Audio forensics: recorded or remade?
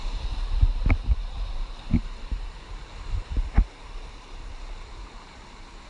remade